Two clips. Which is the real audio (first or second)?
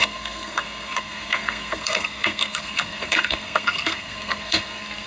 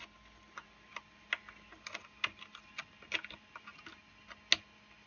second